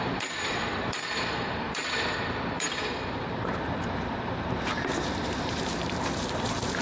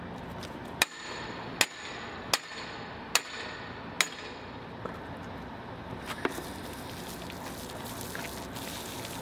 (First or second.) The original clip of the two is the second